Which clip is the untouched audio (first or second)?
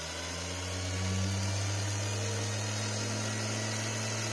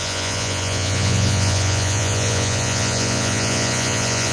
first